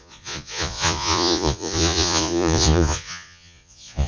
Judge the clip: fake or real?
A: fake